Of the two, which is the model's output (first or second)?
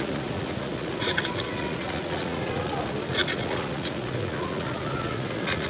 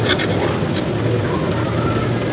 first